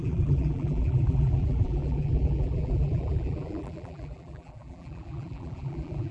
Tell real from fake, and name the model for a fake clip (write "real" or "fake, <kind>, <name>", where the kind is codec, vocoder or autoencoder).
fake, vocoder, BigVGAN v2